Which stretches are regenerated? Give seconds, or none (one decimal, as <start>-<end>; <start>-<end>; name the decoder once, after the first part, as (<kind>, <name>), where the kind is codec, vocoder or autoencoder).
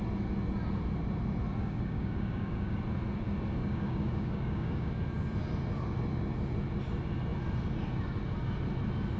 1.6-2.8 (codec, DAC); 3.6-4.9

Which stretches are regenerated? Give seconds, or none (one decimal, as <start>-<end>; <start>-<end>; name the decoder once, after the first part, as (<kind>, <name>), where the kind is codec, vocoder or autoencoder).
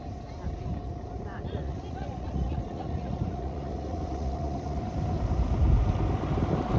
1.3-4.8 (vocoder, Vocos)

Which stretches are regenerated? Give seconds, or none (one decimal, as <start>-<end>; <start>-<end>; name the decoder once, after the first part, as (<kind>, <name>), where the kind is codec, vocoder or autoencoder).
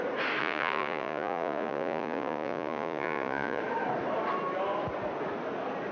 0.4-3.6 (vocoder, Vocos)